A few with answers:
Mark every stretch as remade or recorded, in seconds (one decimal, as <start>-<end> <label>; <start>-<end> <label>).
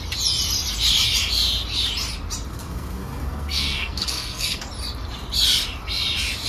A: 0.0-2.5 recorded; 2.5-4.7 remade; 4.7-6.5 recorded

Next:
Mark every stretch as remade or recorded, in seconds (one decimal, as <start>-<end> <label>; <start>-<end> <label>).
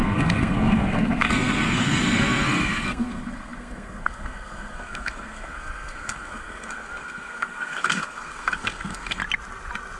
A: 0.0-9.2 remade; 9.2-10.0 recorded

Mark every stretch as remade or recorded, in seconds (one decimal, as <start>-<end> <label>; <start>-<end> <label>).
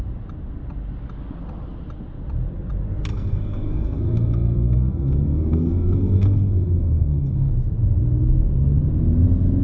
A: 0.0-3.1 recorded; 3.1-7.5 remade; 7.5-9.6 recorded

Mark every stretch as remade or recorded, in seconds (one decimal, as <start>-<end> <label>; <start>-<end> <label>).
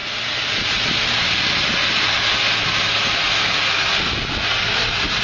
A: 0.0-5.2 recorded